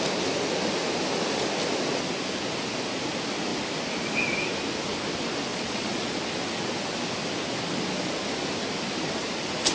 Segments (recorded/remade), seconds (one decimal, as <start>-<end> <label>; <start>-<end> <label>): 0.0-5.5 recorded; 5.5-6.2 remade; 6.2-9.7 recorded